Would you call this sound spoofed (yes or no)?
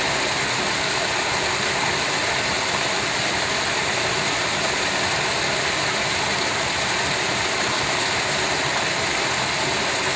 no